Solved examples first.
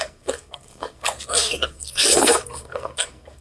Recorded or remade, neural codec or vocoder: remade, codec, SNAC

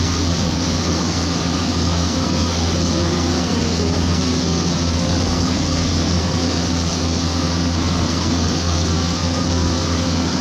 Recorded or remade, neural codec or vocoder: remade, codec, SNAC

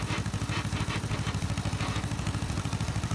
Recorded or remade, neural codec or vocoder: recorded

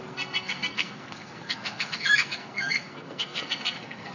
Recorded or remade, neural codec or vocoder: remade, codec, SNAC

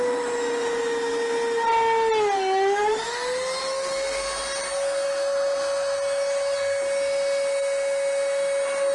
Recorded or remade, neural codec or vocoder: recorded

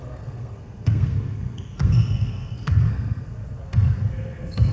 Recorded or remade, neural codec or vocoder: remade, codec, SNAC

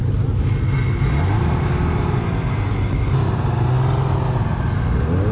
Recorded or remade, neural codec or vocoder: recorded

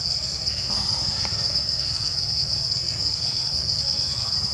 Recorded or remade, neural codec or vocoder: remade, codec, SNAC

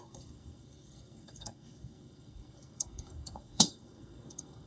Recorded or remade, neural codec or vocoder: remade, codec, SNAC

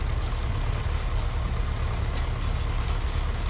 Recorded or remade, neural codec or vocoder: recorded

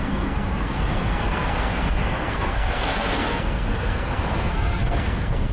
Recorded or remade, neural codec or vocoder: remade, codec, SNAC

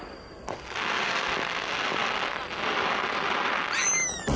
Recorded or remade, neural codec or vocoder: recorded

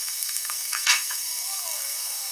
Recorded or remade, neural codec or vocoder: remade, codec, SNAC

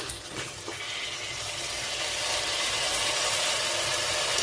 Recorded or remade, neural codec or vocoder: recorded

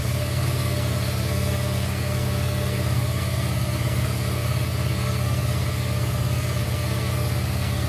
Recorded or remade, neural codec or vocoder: remade, codec, SNAC